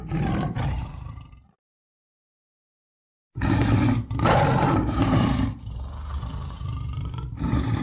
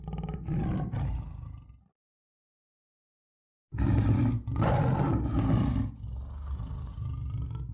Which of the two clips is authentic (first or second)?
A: second